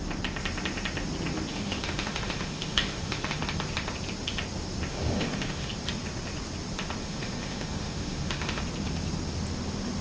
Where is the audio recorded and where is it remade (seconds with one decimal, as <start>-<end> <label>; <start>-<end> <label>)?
0.0-1.5 recorded; 1.5-3.4 remade; 3.4-4.9 recorded; 4.9-5.7 remade; 5.7-7.0 recorded; 7.0-8.6 remade; 8.6-10.0 recorded